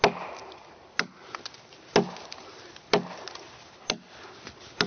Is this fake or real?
real